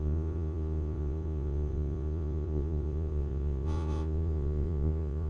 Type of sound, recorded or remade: remade